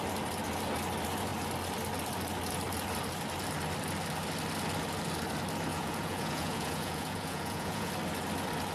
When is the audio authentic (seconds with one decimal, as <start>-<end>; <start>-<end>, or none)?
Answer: 0.0-5.7; 7.9-8.7